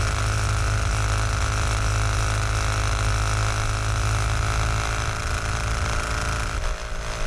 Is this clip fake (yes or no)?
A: no